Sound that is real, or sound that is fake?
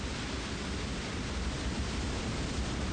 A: real